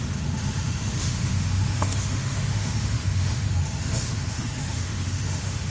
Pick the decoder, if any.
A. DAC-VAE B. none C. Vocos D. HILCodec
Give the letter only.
A